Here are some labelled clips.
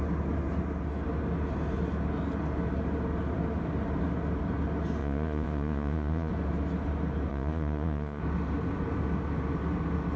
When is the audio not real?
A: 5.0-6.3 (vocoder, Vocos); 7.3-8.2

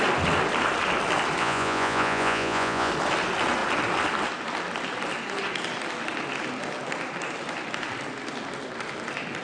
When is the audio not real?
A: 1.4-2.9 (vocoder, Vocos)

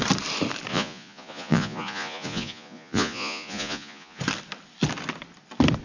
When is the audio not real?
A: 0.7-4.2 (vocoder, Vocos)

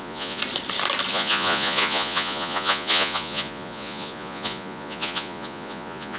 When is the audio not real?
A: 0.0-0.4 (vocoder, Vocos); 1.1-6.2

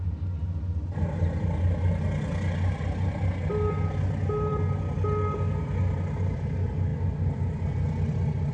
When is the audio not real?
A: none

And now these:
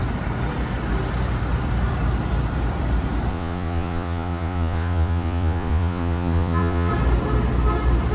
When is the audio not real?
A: 3.3-6.9 (vocoder, Vocos)